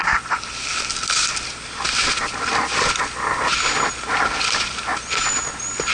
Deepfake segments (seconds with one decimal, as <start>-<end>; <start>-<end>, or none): none